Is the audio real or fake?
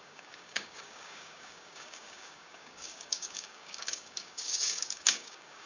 fake